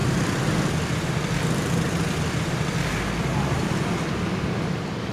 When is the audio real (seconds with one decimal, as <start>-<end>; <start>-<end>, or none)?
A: 0.0-3.3; 4.0-5.1

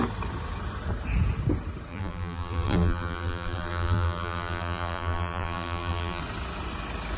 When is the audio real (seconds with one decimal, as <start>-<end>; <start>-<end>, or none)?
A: 0.0-1.9; 6.2-7.2

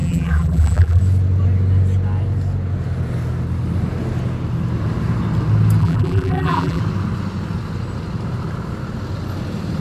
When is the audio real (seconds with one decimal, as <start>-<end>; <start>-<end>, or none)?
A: 1.0-5.8; 6.8-9.8

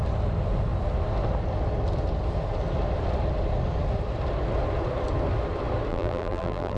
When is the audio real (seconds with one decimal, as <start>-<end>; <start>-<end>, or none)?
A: 0.0-5.9

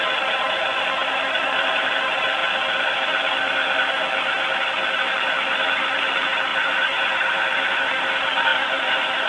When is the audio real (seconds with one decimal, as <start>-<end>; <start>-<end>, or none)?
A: 0.0-1.0; 2.0-6.5; 8.1-8.5